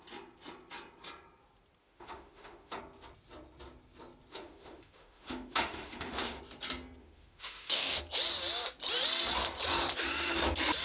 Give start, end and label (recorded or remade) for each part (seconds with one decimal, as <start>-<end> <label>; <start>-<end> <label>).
0.0-1.8 recorded; 1.8-2.8 remade; 2.8-4.3 recorded; 4.3-6.4 remade; 6.4-7.0 recorded; 7.0-8.0 remade; 8.0-10.8 recorded